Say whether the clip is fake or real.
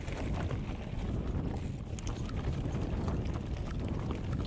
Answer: real